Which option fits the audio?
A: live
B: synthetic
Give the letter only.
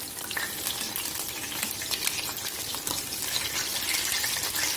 A